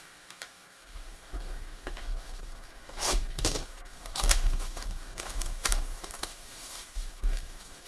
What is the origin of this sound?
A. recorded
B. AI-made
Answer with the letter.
B